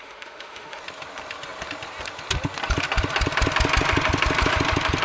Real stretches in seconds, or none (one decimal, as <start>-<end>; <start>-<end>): 0.8-5.0